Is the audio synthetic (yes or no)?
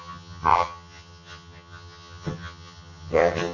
yes